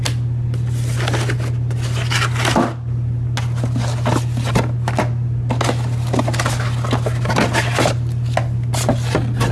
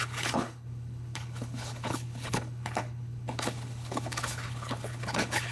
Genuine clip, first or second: first